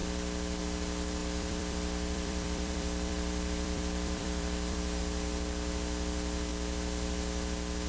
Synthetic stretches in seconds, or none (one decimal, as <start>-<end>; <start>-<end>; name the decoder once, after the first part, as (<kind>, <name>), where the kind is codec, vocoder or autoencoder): 1.2-5.0 (vocoder, BigVGAN v2)